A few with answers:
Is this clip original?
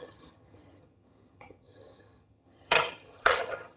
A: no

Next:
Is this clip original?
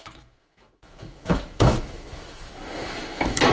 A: no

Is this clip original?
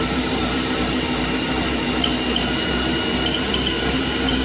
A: no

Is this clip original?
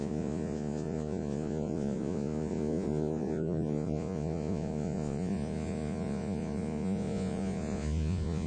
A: no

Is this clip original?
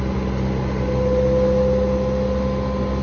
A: yes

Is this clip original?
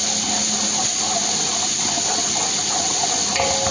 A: yes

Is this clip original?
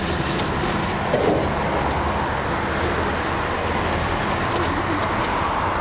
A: yes